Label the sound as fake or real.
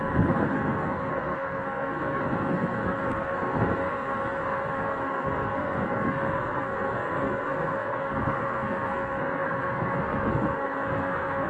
fake